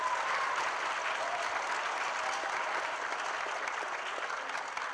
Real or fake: real